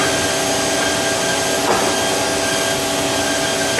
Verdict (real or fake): real